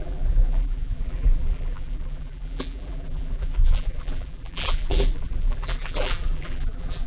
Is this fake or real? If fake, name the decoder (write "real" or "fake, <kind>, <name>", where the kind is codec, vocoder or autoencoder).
fake, vocoder, BigVGAN v2